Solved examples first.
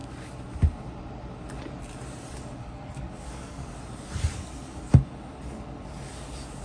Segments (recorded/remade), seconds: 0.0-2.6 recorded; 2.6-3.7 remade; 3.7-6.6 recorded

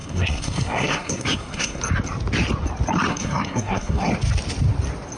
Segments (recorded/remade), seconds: 0.0-1.8 remade; 1.8-3.1 recorded; 3.1-4.1 remade; 4.1-5.2 recorded

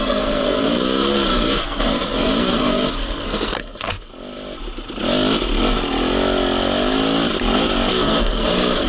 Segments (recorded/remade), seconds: 0.0-4.1 remade; 4.1-7.9 recorded; 7.9-8.9 remade